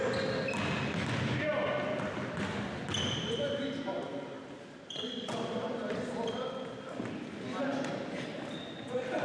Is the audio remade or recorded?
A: recorded